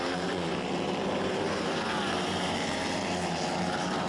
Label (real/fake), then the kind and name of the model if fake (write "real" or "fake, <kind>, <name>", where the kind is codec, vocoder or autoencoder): fake, vocoder, BigVGAN v2